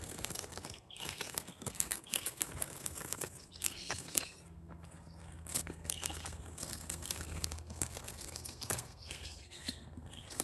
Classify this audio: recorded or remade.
remade